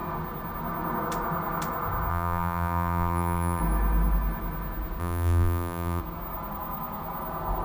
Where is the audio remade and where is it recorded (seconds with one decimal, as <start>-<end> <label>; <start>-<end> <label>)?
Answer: 0.0-2.1 recorded; 2.1-3.6 remade; 3.6-5.0 recorded; 5.0-6.0 remade; 6.0-7.6 recorded